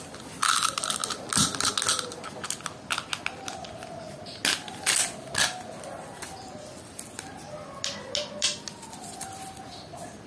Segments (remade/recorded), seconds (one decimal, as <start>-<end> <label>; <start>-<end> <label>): 0.0-10.3 recorded